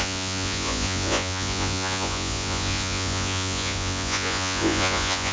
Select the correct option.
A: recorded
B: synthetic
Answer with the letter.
B